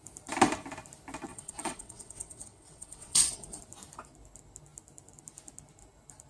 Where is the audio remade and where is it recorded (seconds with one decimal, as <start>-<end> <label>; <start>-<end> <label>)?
0.0-1.3 recorded; 1.3-3.6 remade; 3.6-6.3 recorded